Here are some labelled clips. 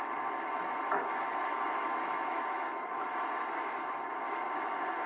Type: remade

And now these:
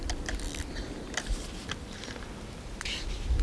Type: recorded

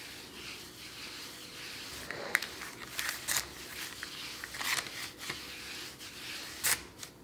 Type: recorded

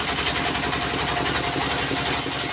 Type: recorded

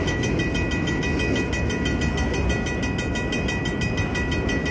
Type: recorded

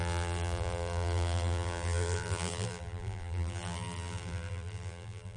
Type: remade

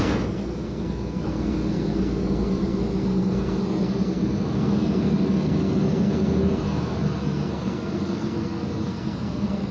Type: remade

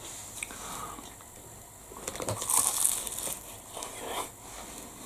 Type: recorded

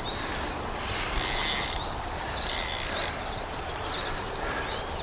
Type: recorded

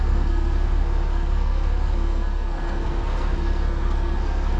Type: remade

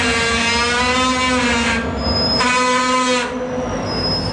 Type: recorded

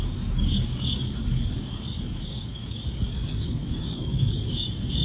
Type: remade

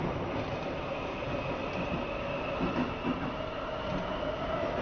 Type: recorded